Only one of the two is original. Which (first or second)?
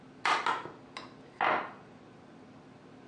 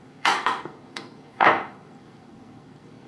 first